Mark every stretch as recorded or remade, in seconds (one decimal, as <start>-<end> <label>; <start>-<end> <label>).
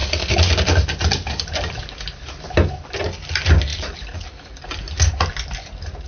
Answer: 0.0-6.1 recorded